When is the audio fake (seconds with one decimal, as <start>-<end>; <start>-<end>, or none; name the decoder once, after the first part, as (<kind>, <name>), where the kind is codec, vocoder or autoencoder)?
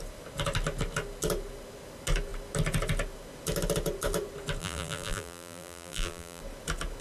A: 4.6-6.4 (vocoder, BigVGAN v2)